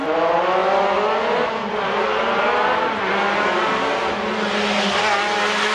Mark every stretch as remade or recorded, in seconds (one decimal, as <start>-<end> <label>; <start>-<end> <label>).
0.0-5.7 recorded